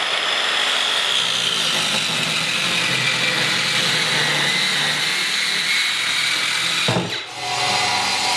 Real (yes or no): yes